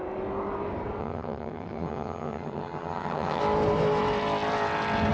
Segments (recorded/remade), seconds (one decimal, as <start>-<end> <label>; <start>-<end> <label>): 0.0-1.0 recorded; 1.0-3.4 remade; 3.4-5.1 recorded